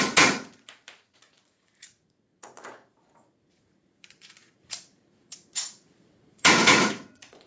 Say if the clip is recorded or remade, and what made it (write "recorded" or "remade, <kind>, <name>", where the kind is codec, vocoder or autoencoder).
remade, vocoder, Vocos